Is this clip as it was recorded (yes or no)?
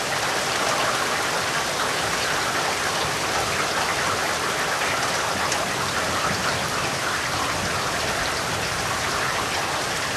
yes